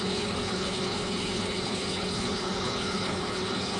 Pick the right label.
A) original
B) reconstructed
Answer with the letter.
B